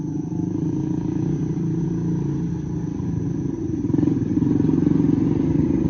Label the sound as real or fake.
real